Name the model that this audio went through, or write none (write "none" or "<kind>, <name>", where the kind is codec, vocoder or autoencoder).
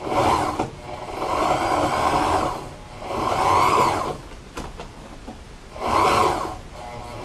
none